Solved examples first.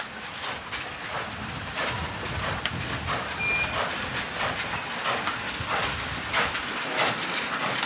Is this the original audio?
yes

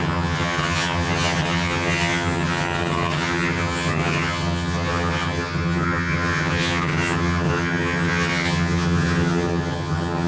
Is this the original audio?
no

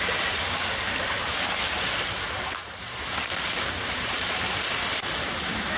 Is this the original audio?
yes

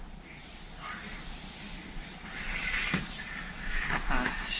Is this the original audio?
yes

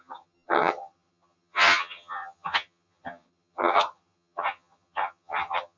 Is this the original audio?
no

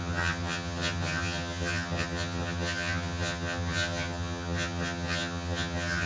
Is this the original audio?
no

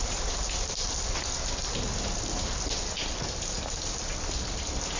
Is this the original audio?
yes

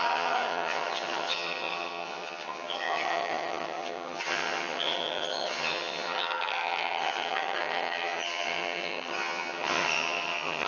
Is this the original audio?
no